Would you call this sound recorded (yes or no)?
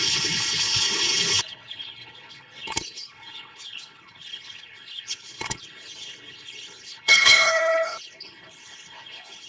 no